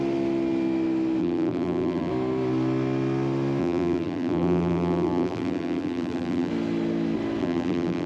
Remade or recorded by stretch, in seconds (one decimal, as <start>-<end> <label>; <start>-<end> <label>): 0.0-1.2 recorded; 1.2-2.1 remade; 2.1-3.6 recorded; 3.6-6.5 remade; 6.5-7.4 recorded; 7.4-8.1 remade